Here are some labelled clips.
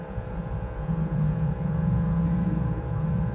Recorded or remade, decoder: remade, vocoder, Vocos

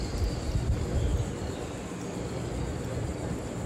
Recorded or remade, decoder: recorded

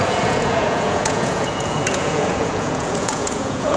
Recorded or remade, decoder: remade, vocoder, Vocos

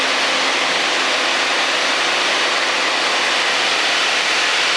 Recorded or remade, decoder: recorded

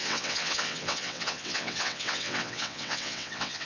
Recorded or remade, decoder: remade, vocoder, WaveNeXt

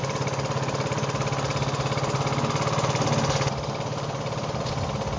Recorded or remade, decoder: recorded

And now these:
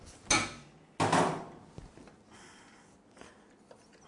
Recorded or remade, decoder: recorded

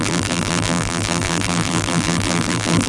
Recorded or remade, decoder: remade, vocoder, BigVGAN v2